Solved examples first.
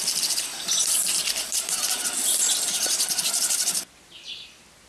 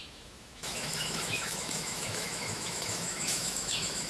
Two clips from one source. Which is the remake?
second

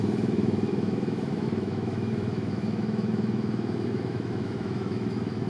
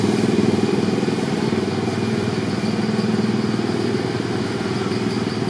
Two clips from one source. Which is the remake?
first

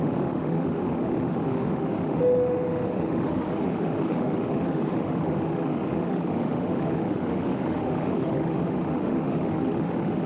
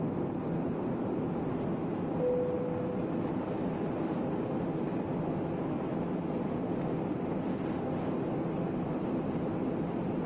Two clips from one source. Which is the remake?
first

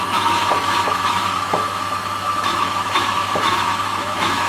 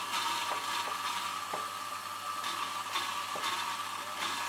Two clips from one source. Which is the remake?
first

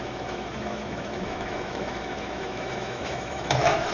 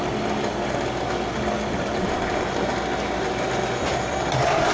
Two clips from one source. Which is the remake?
first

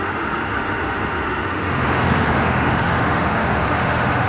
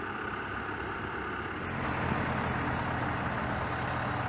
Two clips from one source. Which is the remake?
first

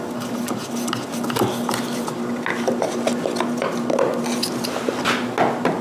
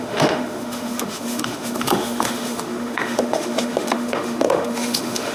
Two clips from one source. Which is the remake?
second